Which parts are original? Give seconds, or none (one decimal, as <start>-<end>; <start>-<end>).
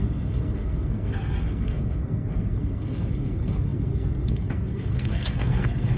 none